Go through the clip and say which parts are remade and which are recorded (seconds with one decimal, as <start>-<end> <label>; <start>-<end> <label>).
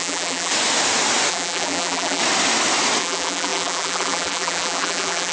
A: 0.0-0.5 remade; 0.5-1.3 recorded; 1.3-2.2 remade; 2.2-3.0 recorded; 3.0-5.3 remade